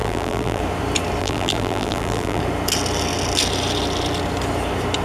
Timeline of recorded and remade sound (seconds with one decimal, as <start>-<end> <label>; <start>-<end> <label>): 0.0-0.6 remade; 0.6-1.2 recorded; 1.2-2.4 remade; 2.4-5.0 recorded